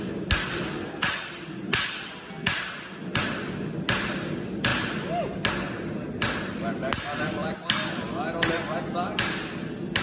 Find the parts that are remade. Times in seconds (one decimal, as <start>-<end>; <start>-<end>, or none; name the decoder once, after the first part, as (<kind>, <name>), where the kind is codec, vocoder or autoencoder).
none